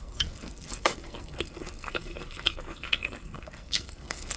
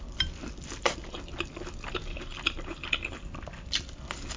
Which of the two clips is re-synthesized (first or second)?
first